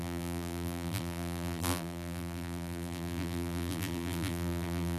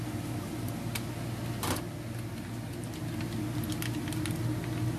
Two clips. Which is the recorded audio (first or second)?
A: second